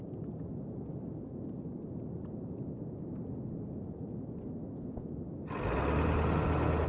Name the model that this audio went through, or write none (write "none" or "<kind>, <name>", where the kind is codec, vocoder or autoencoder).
none